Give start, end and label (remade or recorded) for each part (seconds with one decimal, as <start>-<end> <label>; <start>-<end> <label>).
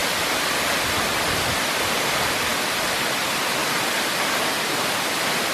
0.0-5.5 recorded